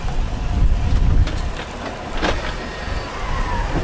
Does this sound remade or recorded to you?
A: recorded